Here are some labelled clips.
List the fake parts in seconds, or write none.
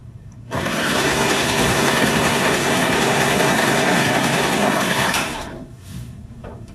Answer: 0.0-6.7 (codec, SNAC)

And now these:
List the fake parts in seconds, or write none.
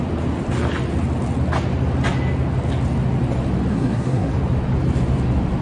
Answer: 3.7-4.3 (codec, SNAC)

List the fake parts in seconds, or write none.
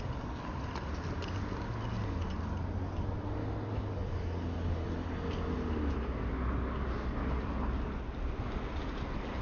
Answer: none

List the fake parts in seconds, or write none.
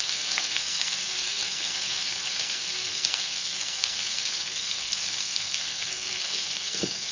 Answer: 0.0-7.1 (codec, SNAC)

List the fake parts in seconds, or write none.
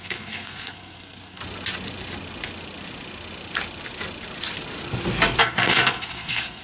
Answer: 0.0-1.4 (codec, SNAC); 5.4-6.6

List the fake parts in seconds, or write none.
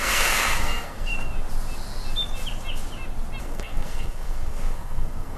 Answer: 0.0-1.1 (codec, SNAC); 3.4-5.4